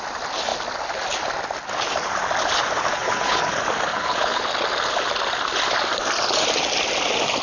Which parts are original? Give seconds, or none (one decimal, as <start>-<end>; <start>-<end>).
0.0-2.9; 3.5-3.9; 4.4-7.4